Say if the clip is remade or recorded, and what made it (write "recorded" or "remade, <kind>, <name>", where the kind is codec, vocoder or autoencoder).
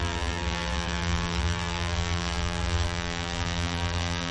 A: remade, vocoder, BigVGAN v2